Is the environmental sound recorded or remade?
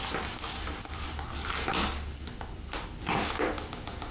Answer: recorded